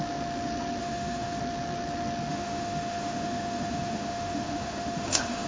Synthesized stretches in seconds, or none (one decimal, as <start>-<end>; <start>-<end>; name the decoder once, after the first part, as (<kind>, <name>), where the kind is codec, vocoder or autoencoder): 0.8-1.4 (autoencoder, DAC-VAE); 2.3-5.5